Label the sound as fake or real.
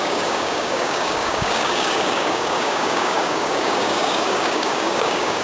fake